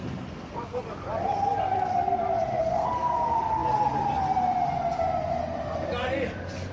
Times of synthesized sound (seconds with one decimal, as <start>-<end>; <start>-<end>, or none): 0.0-0.8; 2.6-3.1